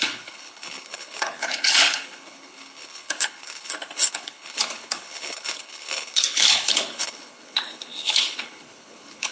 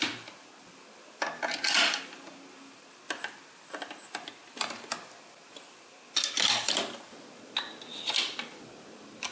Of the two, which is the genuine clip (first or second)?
second